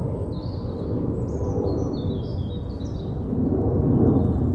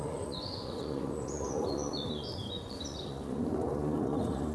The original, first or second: first